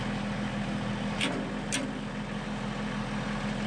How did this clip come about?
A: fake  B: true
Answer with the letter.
B